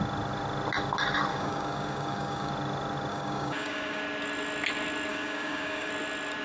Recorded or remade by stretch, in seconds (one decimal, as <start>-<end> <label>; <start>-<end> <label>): 0.0-1.3 recorded; 1.3-2.5 remade; 2.5-3.1 recorded; 3.1-4.0 remade; 4.0-5.1 recorded; 5.1-5.9 remade; 5.9-6.4 recorded